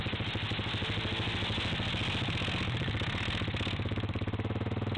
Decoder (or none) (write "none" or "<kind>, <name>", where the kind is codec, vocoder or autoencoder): none